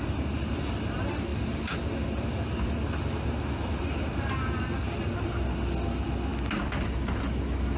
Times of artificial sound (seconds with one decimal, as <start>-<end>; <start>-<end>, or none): none